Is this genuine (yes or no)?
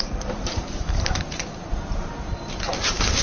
no